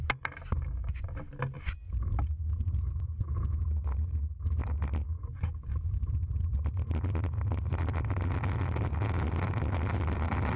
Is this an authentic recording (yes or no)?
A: yes